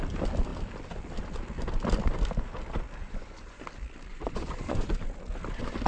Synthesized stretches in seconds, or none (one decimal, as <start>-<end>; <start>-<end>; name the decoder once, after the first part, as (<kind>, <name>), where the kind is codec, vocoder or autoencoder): 3.0-3.6 (vocoder, Vocos); 4.1-4.9